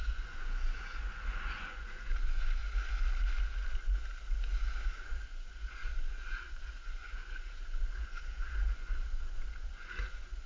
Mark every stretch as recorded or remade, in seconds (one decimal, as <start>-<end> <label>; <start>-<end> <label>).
0.0-2.6 remade; 2.6-4.9 recorded; 4.9-10.5 remade